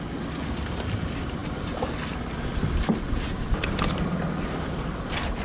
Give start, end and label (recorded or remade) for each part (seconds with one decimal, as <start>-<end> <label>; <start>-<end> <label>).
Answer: 0.0-5.4 recorded